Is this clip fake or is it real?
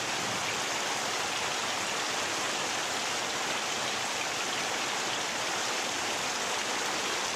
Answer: real